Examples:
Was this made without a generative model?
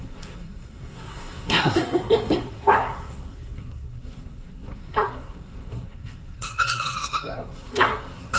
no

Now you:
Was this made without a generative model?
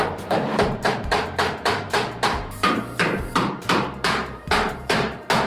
no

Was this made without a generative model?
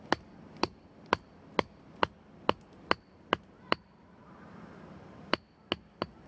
yes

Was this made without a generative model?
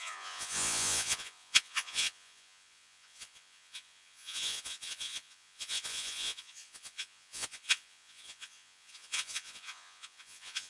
no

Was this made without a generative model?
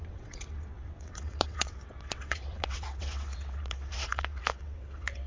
no